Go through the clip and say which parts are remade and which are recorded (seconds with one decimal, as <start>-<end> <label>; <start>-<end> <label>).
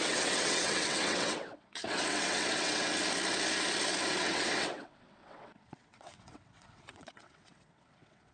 0.0-2.9 remade; 2.9-4.1 recorded; 4.1-8.3 remade